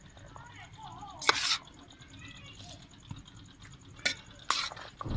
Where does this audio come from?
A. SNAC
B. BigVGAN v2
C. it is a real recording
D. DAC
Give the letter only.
C